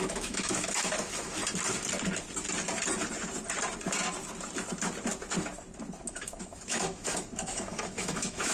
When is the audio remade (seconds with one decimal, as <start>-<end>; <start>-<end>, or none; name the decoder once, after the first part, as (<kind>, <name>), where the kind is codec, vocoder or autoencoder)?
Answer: 0.0-1.4 (autoencoder, DAC-VAE); 6.1-8.5